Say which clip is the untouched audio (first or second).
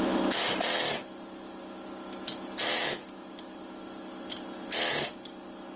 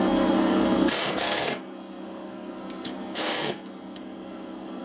first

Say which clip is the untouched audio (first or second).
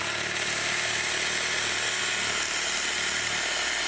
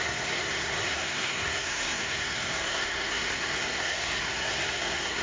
first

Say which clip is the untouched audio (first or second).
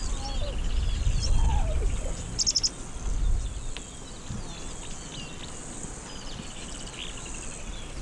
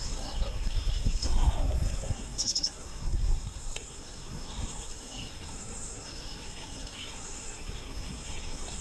first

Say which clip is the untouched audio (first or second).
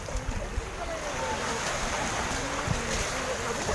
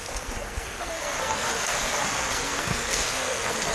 first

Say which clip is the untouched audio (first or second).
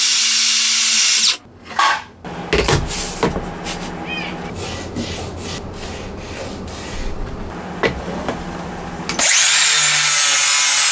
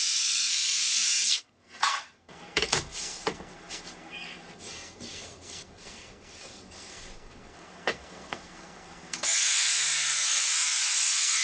first